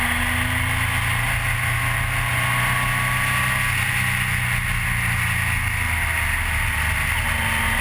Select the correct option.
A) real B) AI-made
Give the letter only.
A